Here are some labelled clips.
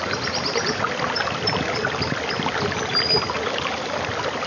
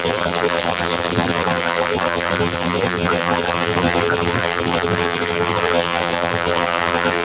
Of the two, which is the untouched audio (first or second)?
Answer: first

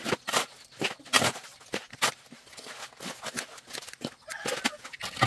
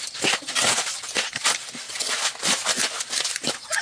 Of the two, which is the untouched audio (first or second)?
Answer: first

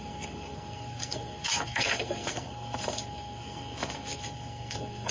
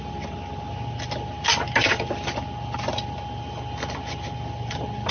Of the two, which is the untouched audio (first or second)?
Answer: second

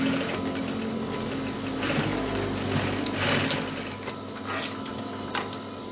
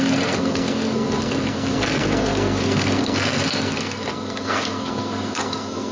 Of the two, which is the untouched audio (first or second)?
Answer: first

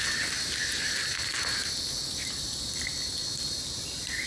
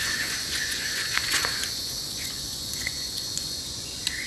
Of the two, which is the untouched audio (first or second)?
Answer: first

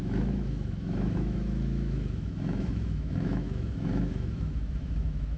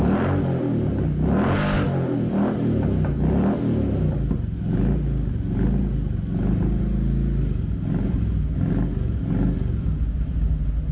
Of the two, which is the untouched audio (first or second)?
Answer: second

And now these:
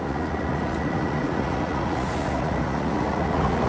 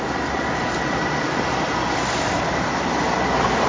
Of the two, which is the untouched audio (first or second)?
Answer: second